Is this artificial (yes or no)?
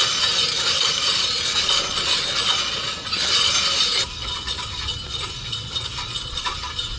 no